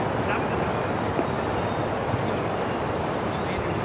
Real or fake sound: real